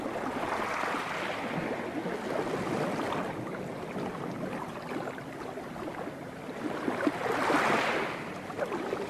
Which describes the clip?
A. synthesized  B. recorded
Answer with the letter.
B